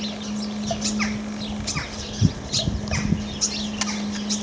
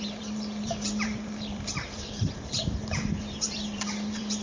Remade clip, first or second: second